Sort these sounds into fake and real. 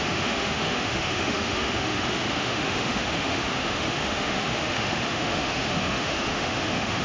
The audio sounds fake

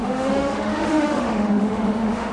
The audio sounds fake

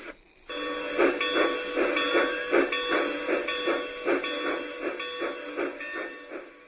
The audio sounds real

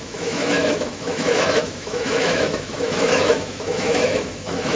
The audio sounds fake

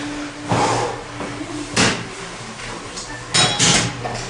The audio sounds real